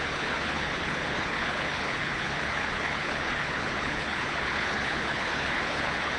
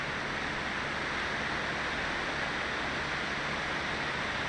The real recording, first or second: second